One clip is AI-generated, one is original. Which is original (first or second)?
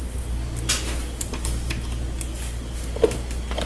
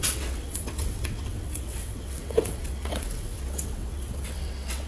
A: first